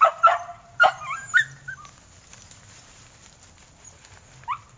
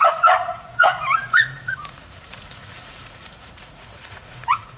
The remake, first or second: second